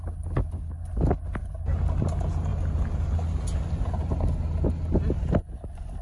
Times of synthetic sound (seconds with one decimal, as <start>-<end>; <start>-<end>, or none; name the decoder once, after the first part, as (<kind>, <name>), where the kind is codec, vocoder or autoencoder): none